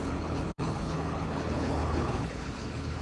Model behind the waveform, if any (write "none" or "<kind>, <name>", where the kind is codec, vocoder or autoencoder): codec, HILCodec